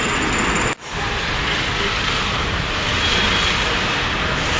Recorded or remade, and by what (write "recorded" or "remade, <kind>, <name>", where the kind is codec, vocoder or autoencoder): recorded